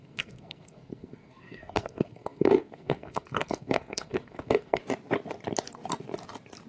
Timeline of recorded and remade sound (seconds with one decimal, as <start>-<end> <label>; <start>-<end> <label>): 0.0-4.8 remade; 4.8-6.7 recorded